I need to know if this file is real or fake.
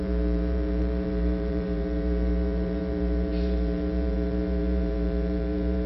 fake